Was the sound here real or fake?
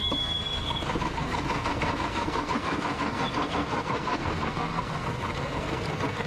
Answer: fake